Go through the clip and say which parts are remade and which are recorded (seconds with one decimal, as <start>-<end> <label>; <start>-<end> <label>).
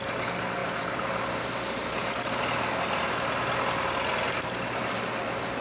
0.0-5.6 recorded